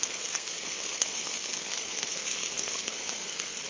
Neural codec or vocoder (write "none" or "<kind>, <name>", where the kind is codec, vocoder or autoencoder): codec, SNAC